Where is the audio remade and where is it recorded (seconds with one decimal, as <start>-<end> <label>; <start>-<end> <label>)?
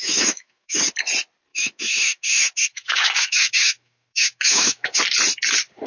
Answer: 0.0-0.8 remade; 0.8-1.5 recorded; 1.5-5.0 remade; 5.0-5.9 recorded